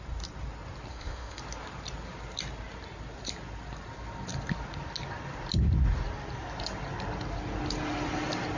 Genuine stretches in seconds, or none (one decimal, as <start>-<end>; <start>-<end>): 0.0-0.9; 1.4-8.6